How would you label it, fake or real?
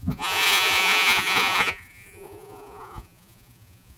fake